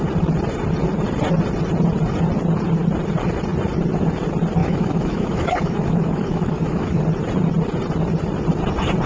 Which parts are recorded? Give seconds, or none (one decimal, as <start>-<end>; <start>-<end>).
0.0-4.6; 7.0-9.1